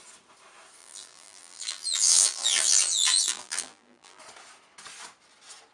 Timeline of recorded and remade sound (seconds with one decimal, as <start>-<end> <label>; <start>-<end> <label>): 0.0-0.8 recorded; 0.8-4.2 remade; 4.2-5.7 recorded